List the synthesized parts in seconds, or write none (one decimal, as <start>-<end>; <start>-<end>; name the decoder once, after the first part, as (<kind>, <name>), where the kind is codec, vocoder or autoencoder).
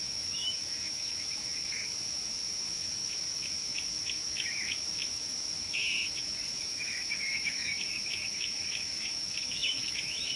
0.0-10.4 (autoencoder, DAC-VAE)